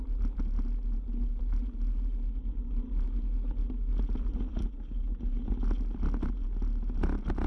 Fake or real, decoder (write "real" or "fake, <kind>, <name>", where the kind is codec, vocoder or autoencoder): real